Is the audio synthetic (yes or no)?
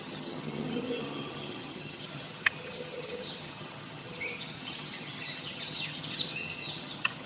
yes